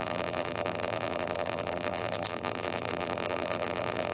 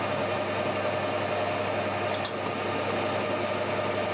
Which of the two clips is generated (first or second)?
first